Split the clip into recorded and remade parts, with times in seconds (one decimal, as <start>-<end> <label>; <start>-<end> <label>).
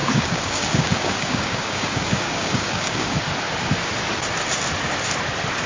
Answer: 0.0-3.2 remade; 3.2-5.7 recorded